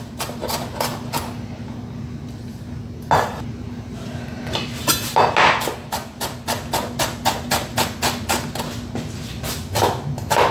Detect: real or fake real